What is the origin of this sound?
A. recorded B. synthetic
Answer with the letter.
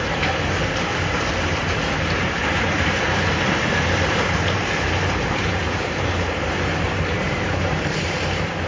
B